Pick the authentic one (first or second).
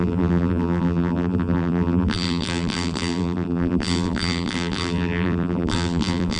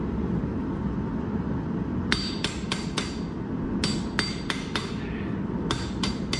second